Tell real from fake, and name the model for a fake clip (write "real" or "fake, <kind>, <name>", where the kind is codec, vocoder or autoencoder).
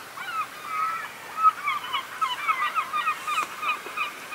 real